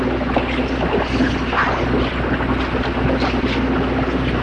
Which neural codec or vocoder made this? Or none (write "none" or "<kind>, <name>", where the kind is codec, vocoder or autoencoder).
none